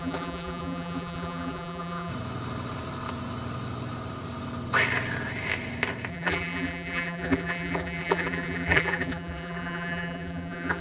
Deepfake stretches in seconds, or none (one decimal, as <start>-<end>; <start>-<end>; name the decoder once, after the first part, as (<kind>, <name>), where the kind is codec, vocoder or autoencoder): 0.0-2.1 (vocoder, BigVGAN v2); 6.1-10.8